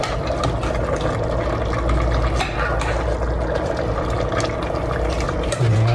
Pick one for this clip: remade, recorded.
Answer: recorded